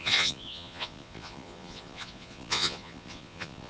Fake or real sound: fake